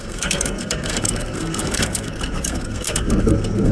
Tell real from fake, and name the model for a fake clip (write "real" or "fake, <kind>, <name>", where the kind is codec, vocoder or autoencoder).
fake, codec, SNAC